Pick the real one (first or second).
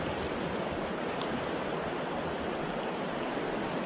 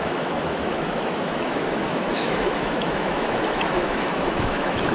first